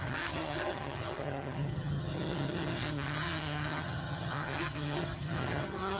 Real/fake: fake